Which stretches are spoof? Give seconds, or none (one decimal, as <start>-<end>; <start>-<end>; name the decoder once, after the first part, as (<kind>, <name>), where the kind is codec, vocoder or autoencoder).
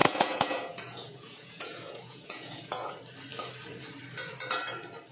0.0-2.9 (vocoder, Vocos)